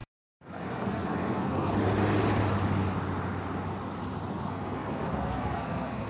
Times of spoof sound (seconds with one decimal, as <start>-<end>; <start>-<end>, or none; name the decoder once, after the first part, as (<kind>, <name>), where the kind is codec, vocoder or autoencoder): 0.0-1.7 (codec, SNAC); 4.3-6.1